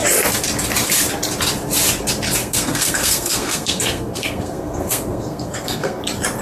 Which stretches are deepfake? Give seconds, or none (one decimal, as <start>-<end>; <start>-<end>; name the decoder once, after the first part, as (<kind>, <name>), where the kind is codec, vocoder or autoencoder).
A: 2.4-6.0 (codec, SNAC)